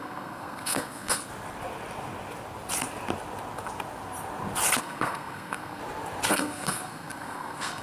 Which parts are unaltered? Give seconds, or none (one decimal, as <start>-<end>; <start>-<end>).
1.3-4.8; 5.8-6.3